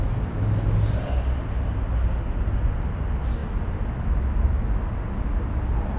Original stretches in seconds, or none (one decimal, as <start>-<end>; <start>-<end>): 0.0-6.0